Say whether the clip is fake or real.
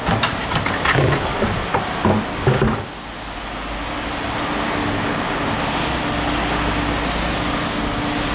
real